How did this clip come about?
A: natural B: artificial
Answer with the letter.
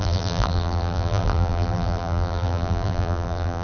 B